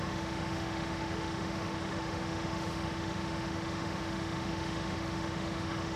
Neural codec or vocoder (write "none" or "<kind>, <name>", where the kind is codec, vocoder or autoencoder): autoencoder, DAC-VAE